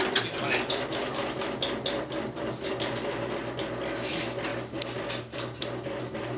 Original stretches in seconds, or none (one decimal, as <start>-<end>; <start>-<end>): 0.0-6.4